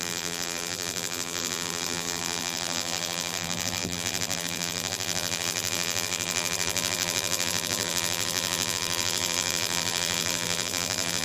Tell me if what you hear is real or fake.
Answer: fake